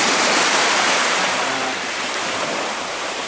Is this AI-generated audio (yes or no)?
yes